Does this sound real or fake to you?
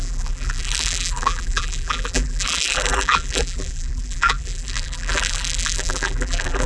fake